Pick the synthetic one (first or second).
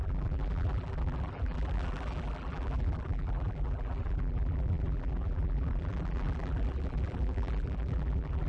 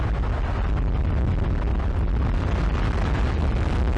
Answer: first